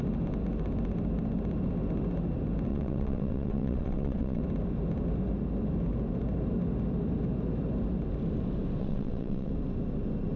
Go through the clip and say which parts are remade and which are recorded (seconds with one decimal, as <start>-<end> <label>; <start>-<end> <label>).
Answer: 0.0-2.7 recorded; 2.7-4.4 remade; 4.4-8.8 recorded; 8.8-9.5 remade; 9.5-10.4 recorded